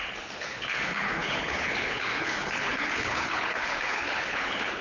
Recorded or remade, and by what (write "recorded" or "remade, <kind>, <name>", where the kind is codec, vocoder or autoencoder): remade, codec, HILCodec